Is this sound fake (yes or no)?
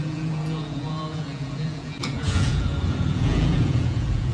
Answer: yes